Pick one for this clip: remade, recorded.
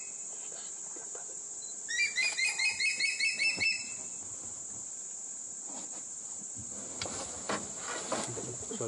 remade